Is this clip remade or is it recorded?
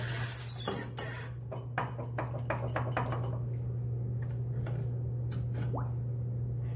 recorded